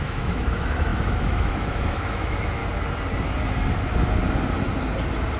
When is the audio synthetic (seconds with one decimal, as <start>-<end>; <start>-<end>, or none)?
0.0-2.6

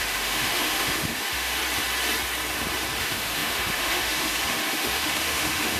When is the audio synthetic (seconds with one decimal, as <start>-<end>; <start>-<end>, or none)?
0.0-1.6; 3.0-5.8

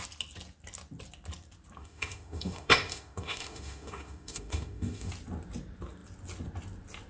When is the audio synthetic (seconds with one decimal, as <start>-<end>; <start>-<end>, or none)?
1.8-5.1